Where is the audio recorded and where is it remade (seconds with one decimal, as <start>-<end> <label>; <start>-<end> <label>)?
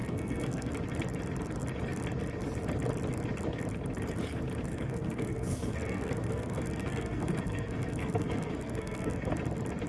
0.0-0.7 remade; 0.7-4.7 recorded; 4.7-9.3 remade; 9.3-9.9 recorded